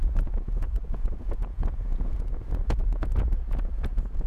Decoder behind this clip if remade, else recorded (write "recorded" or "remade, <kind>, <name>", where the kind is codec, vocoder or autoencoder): remade, vocoder, Vocos